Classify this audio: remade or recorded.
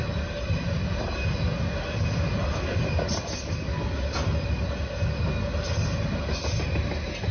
recorded